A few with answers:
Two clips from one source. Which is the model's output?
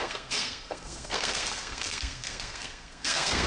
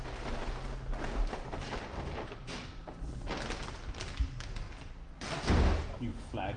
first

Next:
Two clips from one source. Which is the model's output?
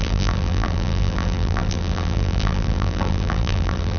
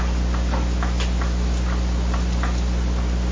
first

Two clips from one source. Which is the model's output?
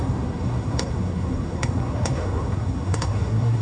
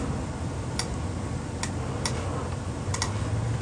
first